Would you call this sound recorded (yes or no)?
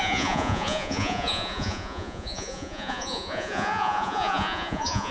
no